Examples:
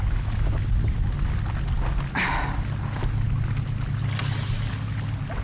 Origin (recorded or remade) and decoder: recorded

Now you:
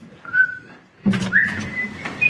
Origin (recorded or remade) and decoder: remade, vocoder, BigVGAN v2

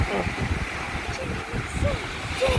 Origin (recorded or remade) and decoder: recorded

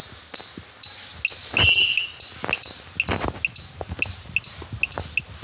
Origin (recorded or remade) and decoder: recorded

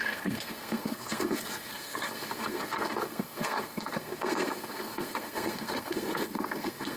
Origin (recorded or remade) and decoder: remade, codec, SNAC